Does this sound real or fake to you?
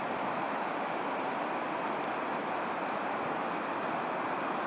real